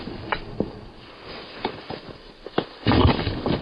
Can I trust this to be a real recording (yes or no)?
yes